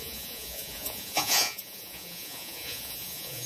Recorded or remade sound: remade